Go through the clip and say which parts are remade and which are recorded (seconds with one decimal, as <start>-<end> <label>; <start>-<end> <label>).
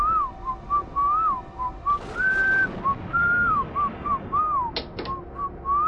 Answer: 0.0-3.2 recorded; 3.2-4.4 remade; 4.4-5.9 recorded